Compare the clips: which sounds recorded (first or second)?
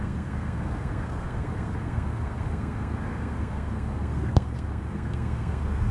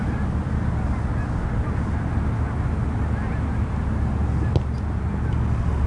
second